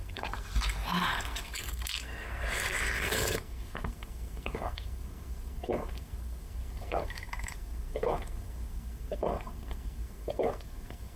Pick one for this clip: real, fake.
fake